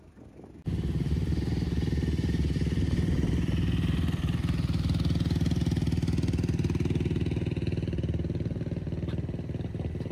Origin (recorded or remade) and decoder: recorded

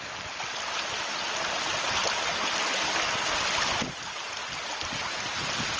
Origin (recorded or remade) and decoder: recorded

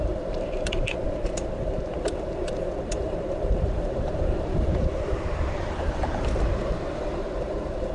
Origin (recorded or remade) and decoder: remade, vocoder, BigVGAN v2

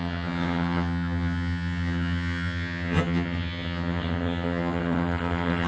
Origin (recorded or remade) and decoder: remade, vocoder, HiFi-GAN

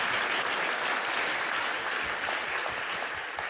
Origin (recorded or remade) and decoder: recorded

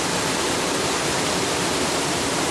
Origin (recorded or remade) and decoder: recorded